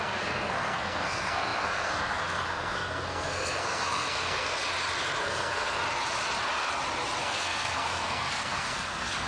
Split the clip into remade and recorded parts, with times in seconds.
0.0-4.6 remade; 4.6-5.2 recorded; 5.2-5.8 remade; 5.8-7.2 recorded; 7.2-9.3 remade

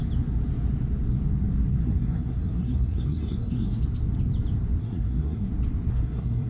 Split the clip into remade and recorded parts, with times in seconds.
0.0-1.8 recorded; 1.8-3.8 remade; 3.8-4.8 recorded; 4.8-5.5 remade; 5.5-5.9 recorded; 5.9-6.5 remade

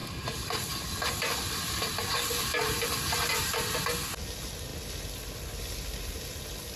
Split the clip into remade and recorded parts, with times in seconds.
0.0-6.8 recorded